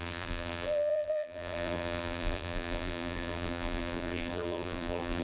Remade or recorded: remade